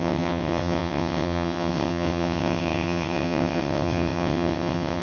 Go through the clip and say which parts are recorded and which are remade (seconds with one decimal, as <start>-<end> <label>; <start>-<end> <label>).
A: 0.0-5.0 remade